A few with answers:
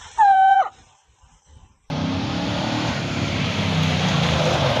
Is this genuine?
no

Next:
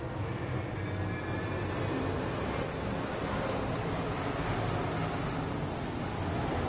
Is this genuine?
yes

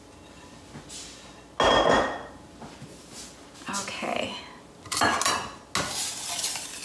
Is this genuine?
yes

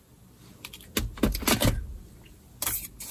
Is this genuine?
yes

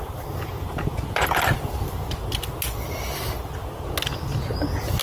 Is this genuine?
yes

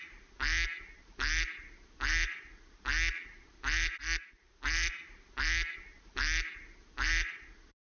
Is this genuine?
yes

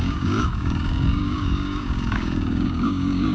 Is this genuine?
no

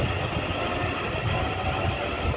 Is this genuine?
yes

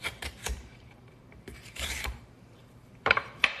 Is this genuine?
no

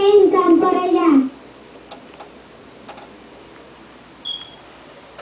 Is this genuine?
yes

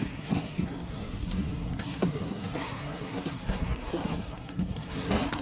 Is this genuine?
no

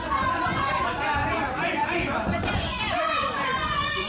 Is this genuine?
no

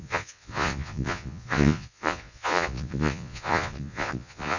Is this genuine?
no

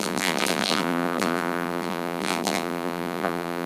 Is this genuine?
no